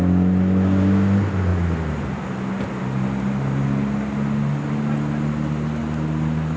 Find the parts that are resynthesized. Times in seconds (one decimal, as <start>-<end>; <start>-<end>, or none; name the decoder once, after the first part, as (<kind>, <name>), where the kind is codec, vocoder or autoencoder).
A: none

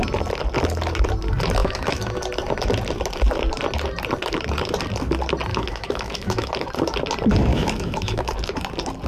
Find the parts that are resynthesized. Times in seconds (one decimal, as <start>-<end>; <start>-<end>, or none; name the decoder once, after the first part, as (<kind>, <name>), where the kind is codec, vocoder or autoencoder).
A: 1.6-2.2 (autoencoder, DAC-VAE); 5.5-6.5; 7.5-8.3

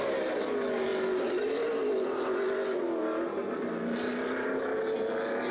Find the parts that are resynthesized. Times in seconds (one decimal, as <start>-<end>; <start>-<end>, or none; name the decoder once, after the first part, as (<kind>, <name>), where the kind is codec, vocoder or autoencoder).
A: none